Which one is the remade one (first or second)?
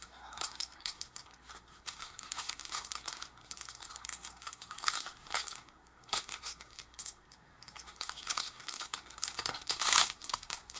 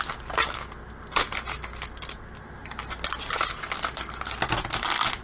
first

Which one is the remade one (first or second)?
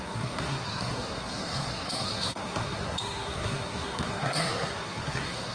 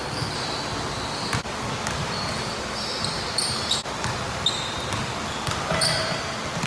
first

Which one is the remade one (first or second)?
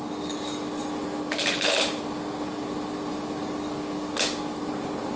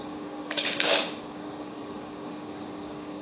second